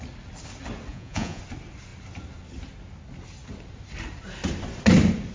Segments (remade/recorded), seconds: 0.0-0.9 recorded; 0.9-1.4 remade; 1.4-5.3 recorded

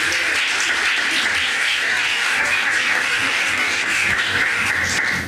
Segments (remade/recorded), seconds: 0.0-1.5 recorded; 1.5-4.7 remade; 4.7-5.3 recorded

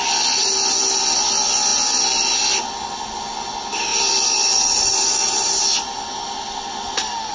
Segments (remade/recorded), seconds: 0.0-7.3 recorded

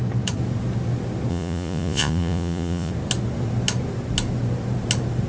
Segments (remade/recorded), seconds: 0.0-1.3 recorded; 1.3-2.9 remade; 2.9-5.3 recorded